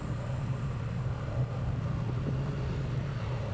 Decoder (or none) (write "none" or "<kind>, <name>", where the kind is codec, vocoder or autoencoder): none